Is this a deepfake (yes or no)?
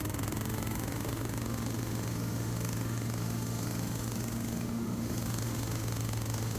yes